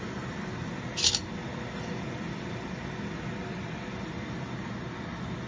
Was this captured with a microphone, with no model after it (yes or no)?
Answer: yes